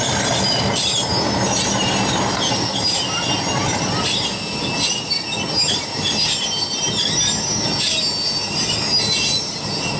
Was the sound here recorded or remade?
recorded